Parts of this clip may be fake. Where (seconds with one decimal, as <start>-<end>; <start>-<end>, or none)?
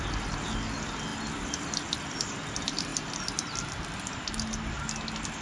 none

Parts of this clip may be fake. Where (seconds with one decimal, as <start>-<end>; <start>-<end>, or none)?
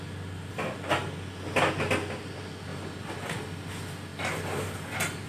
none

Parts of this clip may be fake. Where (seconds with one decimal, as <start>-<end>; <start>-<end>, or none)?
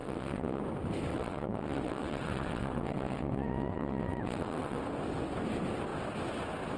0.0-0.6; 1.1-4.8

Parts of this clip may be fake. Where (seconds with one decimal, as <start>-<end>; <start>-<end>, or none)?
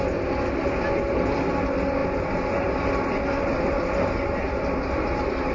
none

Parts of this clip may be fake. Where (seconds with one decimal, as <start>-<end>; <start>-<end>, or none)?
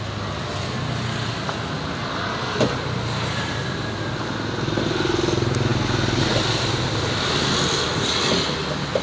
none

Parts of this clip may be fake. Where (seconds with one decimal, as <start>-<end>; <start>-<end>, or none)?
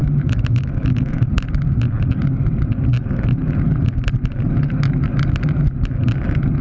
0.0-1.3